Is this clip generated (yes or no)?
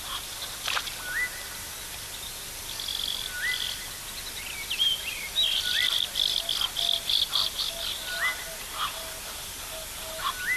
no